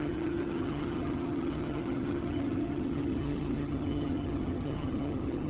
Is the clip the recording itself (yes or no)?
no